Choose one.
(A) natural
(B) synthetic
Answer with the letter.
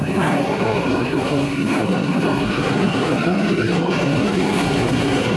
B